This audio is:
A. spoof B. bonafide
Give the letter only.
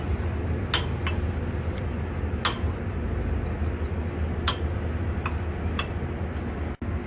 B